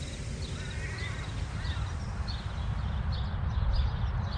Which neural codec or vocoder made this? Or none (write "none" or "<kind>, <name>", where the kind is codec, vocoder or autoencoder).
none